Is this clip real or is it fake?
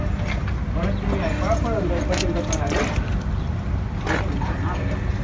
real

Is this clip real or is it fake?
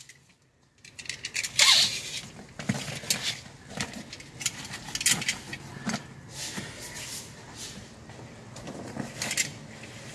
real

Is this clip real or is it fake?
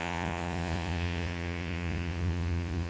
fake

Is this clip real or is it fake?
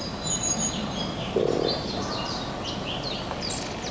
real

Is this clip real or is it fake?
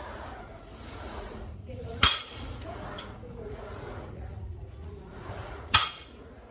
fake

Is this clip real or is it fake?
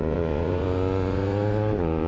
fake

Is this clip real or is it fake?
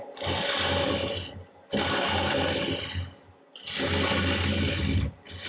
real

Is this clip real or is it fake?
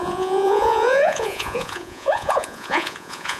fake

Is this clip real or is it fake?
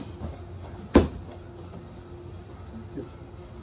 real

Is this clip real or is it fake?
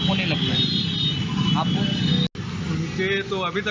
real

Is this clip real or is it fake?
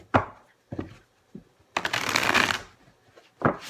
real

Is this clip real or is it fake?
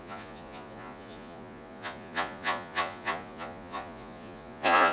fake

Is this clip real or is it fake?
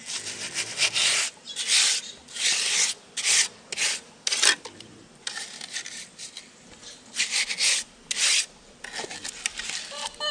real